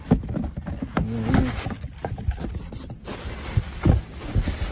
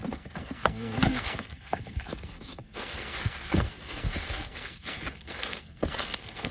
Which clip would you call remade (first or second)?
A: second